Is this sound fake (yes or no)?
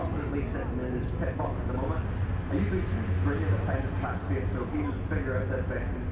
no